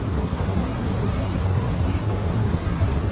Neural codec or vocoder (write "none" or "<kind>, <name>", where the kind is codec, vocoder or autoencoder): codec, SNAC